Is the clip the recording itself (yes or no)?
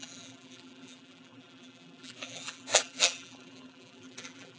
no